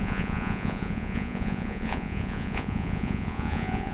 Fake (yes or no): yes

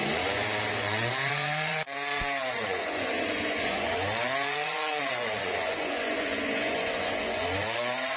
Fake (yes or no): yes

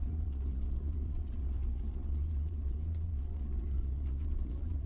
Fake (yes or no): yes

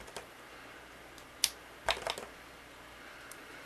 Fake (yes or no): no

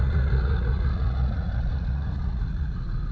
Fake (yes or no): yes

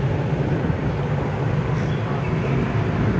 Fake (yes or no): no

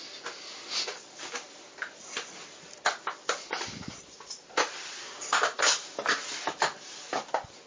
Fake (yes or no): no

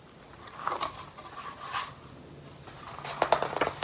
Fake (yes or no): no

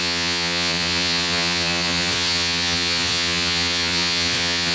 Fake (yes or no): yes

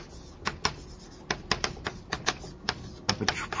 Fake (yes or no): no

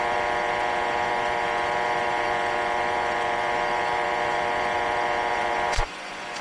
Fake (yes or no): yes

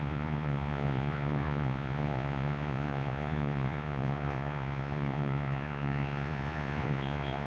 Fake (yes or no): yes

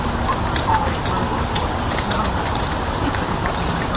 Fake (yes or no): no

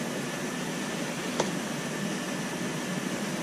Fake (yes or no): no